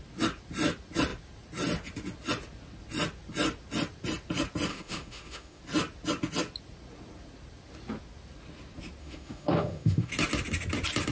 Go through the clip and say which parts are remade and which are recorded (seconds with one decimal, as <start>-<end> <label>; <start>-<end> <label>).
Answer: 0.0-4.7 recorded; 4.7-5.6 remade; 5.6-9.0 recorded; 9.0-10.1 remade; 10.1-11.1 recorded